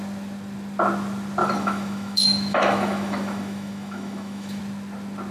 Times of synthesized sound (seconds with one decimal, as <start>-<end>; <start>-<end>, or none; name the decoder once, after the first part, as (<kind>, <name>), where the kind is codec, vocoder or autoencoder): 1.4-4.6 (autoencoder, DAC-VAE)